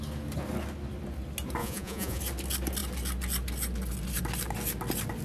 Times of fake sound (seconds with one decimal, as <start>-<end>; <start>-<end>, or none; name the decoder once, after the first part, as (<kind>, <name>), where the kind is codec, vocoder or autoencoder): 1.6-2.2 (vocoder, Vocos)